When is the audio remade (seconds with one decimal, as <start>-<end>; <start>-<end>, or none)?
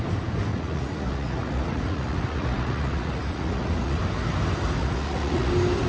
0.5-4.0; 4.8-5.5